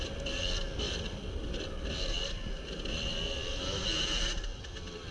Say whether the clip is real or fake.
real